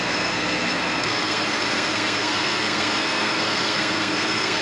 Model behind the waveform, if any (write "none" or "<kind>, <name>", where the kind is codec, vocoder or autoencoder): codec, SNAC